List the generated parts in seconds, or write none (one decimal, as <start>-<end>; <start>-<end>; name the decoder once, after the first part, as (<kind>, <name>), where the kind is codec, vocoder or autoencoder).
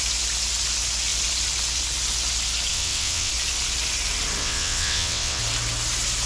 2.7-3.3 (vocoder, WaveNeXt); 4.4-5.4